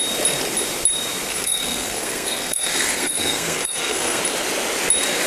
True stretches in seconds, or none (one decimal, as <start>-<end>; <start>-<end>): 0.0-1.3; 4.2-5.3